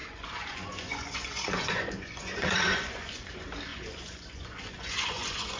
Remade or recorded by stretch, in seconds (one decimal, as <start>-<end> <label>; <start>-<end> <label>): 0.0-3.3 remade; 3.3-3.7 recorded; 3.7-5.6 remade

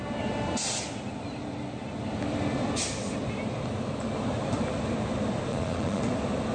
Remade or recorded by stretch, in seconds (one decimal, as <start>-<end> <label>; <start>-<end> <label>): 0.0-5.5 recorded; 5.5-6.0 remade; 6.0-6.5 recorded

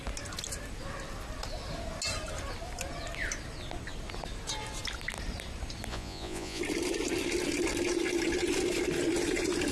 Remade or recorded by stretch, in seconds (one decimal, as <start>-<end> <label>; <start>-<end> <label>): 0.0-5.9 recorded; 5.9-6.6 remade; 6.6-9.7 recorded

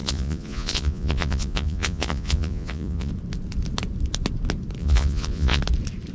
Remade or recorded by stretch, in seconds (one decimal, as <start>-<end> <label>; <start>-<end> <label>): 0.0-3.1 remade; 3.1-4.8 recorded; 4.8-5.6 remade; 5.6-6.1 recorded

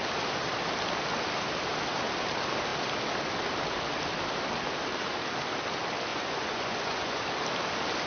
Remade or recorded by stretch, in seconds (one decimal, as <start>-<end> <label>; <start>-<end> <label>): 0.0-6.1 recorded; 6.1-7.2 remade; 7.2-8.1 recorded

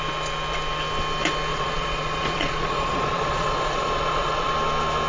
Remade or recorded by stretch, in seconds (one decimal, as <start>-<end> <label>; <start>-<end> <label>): 0.0-1.5 recorded; 1.5-4.5 remade; 4.5-5.1 recorded

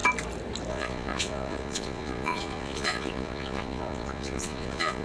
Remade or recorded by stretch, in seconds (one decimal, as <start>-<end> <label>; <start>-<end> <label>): 0.0-0.7 recorded; 0.7-5.0 remade